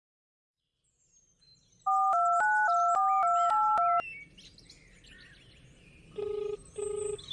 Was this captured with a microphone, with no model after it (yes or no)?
yes